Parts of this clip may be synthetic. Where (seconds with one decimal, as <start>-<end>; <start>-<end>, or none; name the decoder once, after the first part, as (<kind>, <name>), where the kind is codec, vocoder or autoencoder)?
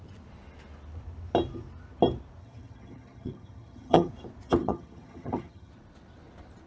2.4-4.1 (vocoder, HiFi-GAN); 4.6-5.7